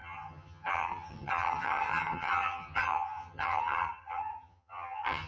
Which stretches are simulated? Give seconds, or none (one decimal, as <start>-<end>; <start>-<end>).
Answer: 0.0-5.3